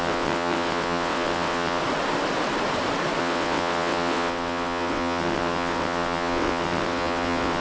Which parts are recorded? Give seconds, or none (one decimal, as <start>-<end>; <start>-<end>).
1.8-3.2